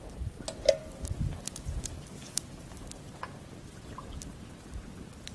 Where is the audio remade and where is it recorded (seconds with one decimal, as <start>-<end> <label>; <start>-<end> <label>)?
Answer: 0.0-0.8 recorded; 0.8-3.0 remade; 3.0-5.3 recorded